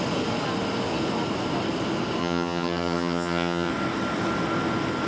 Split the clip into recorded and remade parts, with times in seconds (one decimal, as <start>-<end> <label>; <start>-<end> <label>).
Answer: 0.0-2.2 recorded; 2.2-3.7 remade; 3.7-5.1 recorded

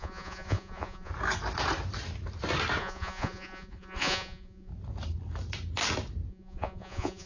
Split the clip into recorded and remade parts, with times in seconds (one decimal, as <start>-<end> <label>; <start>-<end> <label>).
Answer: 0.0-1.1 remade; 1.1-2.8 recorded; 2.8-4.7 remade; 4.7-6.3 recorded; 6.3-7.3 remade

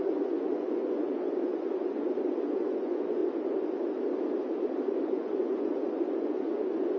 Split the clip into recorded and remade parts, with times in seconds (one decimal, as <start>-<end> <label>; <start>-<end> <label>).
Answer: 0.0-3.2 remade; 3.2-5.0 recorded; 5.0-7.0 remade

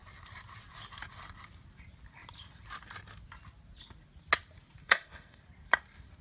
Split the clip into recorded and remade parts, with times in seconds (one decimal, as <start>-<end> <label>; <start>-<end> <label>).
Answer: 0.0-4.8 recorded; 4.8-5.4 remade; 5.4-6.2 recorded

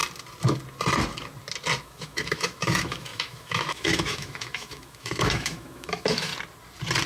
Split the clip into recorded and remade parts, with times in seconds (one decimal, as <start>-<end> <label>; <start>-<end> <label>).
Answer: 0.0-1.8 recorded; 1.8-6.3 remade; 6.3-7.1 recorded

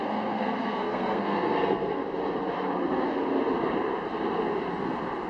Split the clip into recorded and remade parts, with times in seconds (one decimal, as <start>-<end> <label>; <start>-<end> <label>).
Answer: 0.0-2.0 remade; 2.0-5.3 recorded